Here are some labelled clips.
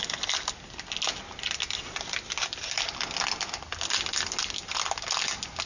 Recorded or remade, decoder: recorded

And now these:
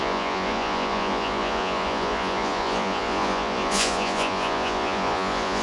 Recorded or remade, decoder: remade, vocoder, Vocos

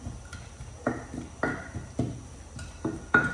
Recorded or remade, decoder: recorded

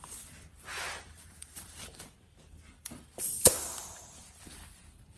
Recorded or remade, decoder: remade, vocoder, BigVGAN v2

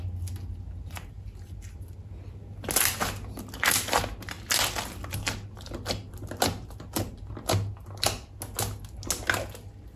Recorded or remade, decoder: recorded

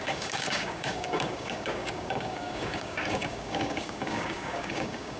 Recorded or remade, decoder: remade, codec, DAC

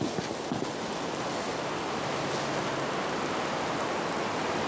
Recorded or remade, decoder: recorded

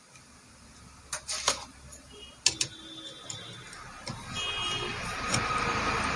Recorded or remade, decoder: recorded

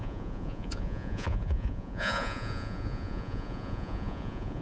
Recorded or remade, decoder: remade, vocoder, Vocos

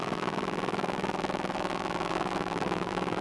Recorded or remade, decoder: remade, vocoder, BigVGAN v2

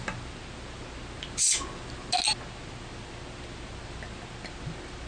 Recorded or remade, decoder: recorded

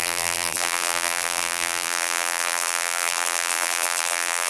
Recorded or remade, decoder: remade, vocoder, BigVGAN v2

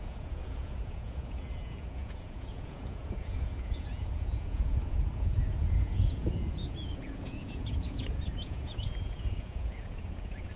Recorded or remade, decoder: remade, vocoder, Vocos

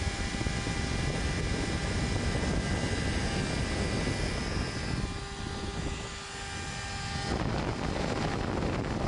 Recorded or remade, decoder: recorded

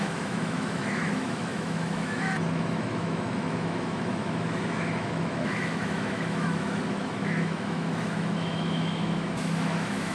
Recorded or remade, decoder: remade, autoencoder, DAC-VAE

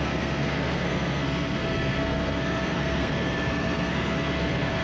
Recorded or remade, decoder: remade, codec, SNAC